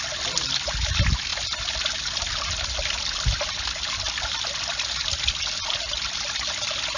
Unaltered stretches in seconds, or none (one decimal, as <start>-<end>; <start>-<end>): 0.0-7.0